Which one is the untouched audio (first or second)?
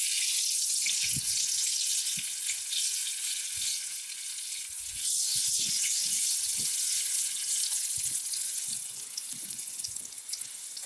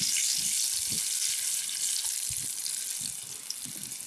second